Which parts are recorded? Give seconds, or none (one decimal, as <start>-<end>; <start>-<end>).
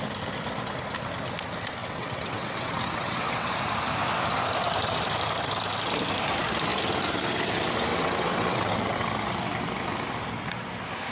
0.0-1.8; 3.5-7.9; 9.1-11.1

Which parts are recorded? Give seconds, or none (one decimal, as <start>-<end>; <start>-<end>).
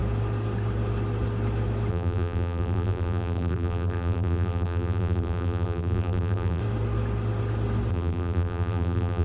0.0-1.9; 6.6-7.9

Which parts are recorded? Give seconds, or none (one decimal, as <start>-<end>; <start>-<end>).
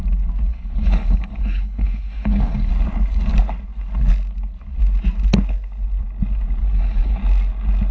0.0-0.5; 2.7-6.6; 7.2-7.9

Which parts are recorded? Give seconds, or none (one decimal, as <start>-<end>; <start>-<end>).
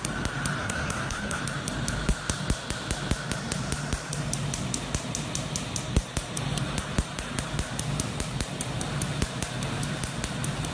0.0-0.6; 1.4-10.7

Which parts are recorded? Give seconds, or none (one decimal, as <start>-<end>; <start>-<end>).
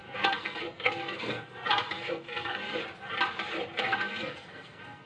2.8-3.8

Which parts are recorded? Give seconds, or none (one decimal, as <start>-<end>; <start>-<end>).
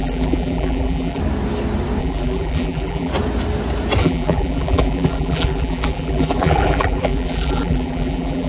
1.2-2.0; 3.1-4.0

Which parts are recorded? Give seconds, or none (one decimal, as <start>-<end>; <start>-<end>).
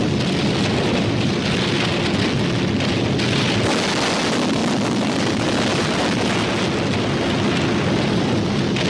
0.0-4.6; 5.6-8.9